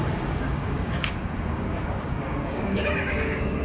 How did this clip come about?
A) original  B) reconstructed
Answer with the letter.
B